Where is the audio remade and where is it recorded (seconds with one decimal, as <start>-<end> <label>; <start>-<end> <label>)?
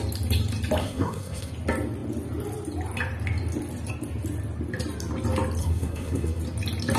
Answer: 0.0-0.8 recorded; 0.8-1.5 remade; 1.5-5.6 recorded; 5.6-6.4 remade; 6.4-7.0 recorded